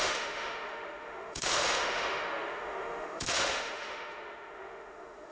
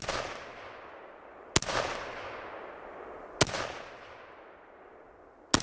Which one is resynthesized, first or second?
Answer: first